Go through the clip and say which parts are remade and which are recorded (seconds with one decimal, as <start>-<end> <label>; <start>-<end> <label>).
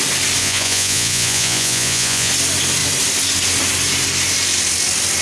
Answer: 0.0-0.4 recorded; 0.4-2.3 remade; 2.3-5.2 recorded